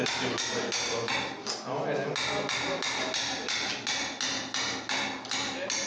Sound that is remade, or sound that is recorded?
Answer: recorded